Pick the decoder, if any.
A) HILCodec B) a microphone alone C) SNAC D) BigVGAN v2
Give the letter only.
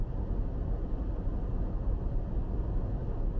B